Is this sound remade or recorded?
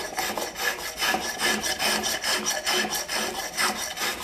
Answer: recorded